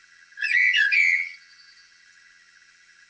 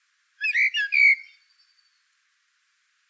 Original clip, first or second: second